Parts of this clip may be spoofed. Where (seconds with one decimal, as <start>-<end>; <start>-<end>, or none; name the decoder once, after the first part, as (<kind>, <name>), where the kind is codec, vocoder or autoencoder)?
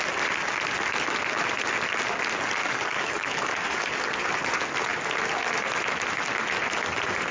2.6-4.0 (codec, DAC)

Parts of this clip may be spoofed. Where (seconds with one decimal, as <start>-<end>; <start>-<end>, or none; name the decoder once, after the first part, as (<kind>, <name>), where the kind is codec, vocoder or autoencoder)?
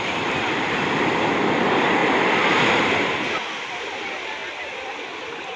none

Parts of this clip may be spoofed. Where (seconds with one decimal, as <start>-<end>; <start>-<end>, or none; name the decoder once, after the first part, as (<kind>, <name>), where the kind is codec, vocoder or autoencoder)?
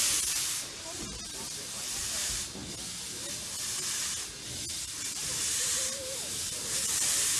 0.0-2.6 (vocoder, BigVGAN v2); 4.8-7.4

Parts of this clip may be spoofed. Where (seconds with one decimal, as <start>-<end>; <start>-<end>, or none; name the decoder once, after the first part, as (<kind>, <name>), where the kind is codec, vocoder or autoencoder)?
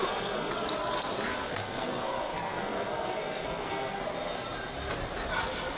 0.0-0.5 (codec, SNAC); 1.3-4.0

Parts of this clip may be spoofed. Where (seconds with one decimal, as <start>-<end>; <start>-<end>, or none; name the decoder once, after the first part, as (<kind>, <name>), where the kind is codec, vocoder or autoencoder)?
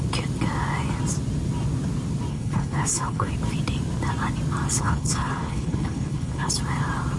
2.3-3.3 (codec, HILCodec); 4.7-6.5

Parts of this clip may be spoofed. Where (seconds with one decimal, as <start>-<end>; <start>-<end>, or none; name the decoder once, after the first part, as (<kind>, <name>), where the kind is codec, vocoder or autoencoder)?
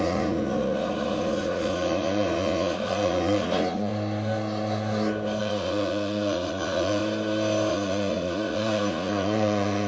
0.0-3.9 (vocoder, Vocos); 5.4-7.0; 7.7-9.9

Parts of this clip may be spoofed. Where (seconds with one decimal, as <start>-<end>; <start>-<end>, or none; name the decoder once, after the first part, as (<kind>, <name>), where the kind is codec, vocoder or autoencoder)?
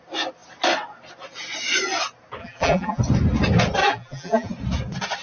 2.4-3.0 (vocoder, BigVGAN v2); 3.8-4.5